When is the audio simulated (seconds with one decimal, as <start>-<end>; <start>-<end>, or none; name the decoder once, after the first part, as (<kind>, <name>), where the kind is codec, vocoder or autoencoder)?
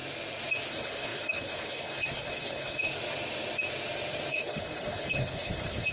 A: 0.7-2.9 (codec, HILCodec); 4.3-5.9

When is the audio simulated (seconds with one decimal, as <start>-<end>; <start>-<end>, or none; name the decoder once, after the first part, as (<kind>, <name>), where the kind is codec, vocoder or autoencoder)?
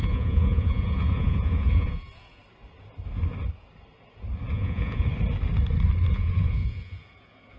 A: 0.0-2.4 (vocoder, Vocos); 4.5-5.1; 6.1-7.6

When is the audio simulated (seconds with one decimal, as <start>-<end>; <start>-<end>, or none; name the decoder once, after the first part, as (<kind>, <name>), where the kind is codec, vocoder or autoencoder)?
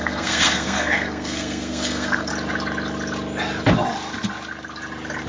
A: 0.0-2.3 (codec, SNAC)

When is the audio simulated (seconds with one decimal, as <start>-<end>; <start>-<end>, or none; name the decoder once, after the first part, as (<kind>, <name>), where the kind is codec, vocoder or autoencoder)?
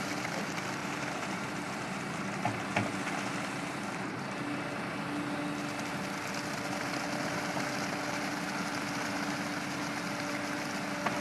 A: 0.8-2.2 (vocoder, BigVGAN v2)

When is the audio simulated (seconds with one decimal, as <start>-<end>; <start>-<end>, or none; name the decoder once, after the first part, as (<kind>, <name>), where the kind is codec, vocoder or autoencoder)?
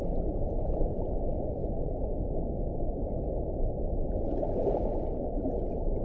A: 0.9-1.6 (vocoder, BigVGAN v2); 5.2-6.0